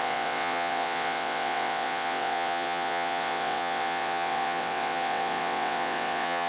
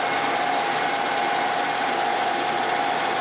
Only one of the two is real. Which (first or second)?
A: second